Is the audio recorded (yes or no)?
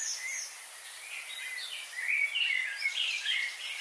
yes